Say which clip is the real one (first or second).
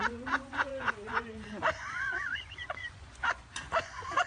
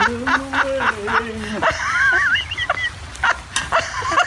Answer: second